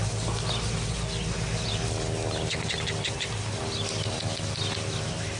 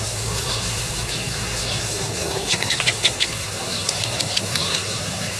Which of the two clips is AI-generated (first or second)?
second